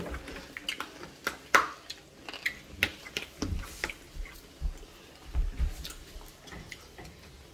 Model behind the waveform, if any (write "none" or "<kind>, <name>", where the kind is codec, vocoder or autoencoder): none